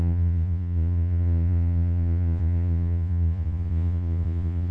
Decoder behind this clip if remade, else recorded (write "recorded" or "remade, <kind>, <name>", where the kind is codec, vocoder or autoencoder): remade, vocoder, Vocos